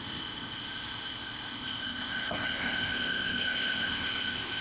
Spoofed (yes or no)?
yes